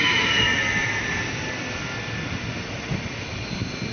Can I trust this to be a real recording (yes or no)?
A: yes